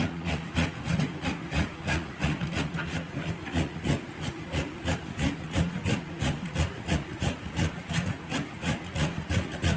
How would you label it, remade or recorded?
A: remade